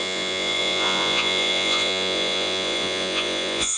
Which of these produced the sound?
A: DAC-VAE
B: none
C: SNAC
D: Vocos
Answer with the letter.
D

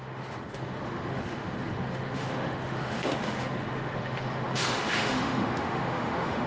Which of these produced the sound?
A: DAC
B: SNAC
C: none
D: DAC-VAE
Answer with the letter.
D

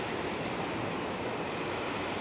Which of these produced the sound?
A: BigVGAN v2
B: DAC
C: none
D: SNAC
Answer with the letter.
C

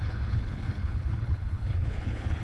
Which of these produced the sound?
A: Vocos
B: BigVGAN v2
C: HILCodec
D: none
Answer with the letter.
C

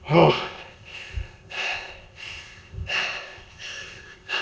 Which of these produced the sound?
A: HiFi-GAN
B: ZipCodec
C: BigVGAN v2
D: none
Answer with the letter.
B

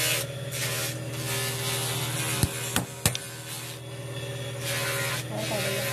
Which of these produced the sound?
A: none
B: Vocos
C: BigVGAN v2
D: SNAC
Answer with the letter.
A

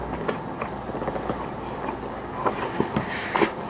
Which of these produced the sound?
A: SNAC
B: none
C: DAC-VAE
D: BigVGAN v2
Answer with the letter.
B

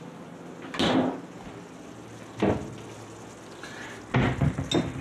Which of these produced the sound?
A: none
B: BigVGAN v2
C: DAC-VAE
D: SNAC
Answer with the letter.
A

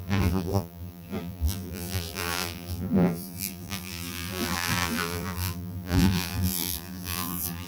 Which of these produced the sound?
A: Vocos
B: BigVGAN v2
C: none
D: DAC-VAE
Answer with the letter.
B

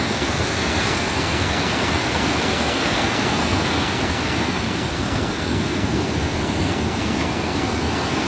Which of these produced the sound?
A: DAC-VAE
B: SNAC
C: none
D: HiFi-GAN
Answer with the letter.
B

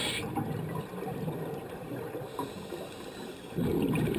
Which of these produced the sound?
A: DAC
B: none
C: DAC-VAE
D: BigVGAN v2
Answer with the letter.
D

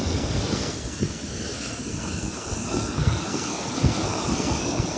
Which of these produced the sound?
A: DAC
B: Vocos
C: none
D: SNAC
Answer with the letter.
D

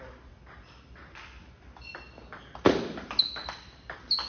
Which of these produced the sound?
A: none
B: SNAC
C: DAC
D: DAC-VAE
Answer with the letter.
A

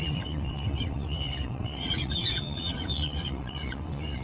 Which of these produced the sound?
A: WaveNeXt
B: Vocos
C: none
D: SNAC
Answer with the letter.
A